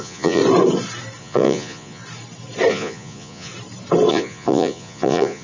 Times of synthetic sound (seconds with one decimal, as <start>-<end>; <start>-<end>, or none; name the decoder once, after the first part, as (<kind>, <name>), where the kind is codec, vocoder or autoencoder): 0.0-0.4 (vocoder, Vocos); 1.2-2.0; 2.7-3.5; 4.1-5.4